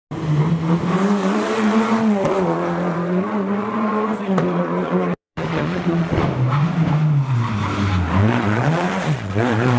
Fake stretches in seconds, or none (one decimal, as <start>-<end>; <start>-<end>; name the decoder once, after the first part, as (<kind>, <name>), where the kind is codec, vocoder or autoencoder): 1.2-6.2 (vocoder, Vocos); 8.2-9.8